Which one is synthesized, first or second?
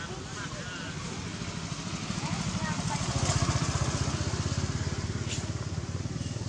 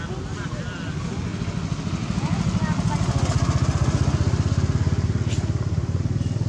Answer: first